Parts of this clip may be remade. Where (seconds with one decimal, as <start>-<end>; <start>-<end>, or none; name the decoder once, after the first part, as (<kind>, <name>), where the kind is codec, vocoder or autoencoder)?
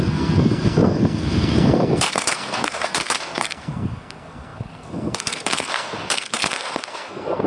0.0-7.5 (codec, SNAC)